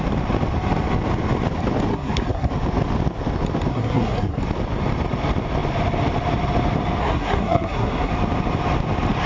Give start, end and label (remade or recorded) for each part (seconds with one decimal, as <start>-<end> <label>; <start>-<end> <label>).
0.0-1.9 recorded; 1.9-2.5 remade; 2.5-3.7 recorded; 3.7-4.4 remade; 4.4-7.0 recorded; 7.0-8.1 remade; 8.1-9.3 recorded